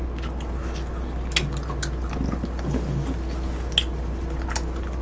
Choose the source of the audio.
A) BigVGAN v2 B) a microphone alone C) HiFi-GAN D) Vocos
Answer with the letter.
B